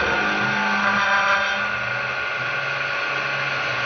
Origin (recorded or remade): recorded